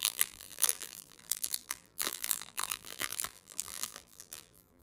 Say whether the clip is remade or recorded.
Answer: remade